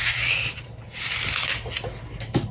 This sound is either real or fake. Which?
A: real